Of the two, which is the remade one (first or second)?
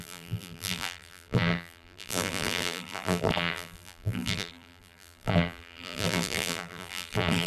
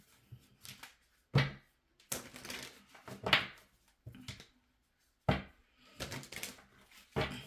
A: first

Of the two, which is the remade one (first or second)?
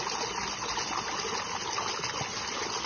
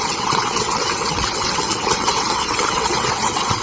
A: second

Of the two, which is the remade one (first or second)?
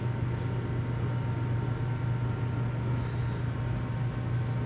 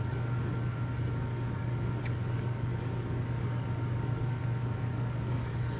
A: second